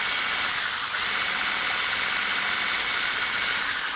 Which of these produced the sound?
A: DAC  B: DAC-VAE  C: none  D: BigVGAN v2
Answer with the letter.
C